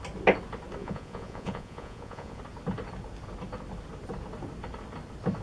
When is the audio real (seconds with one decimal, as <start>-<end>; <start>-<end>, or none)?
0.0-0.8; 2.4-5.4